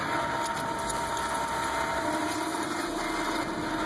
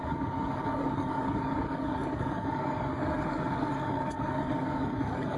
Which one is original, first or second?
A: first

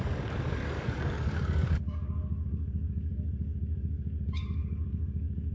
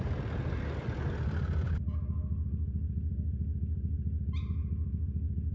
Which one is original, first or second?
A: second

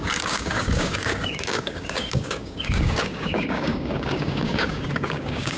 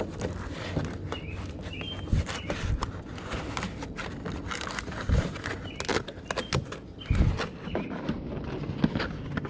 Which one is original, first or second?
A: second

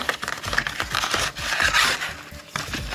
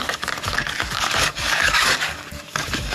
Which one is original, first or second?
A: first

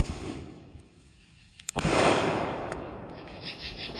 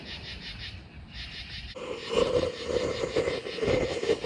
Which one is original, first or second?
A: second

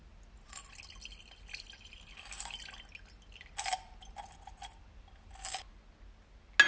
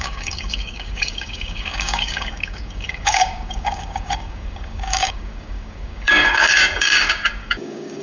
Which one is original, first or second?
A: first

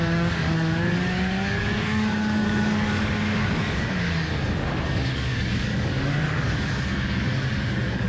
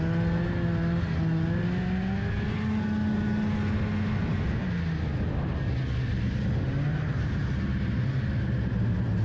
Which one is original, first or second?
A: second